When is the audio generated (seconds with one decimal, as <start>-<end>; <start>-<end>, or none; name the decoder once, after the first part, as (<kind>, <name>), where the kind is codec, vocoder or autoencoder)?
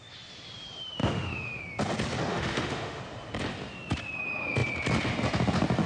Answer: 1.0-1.6 (autoencoder, DAC-VAE); 2.3-3.0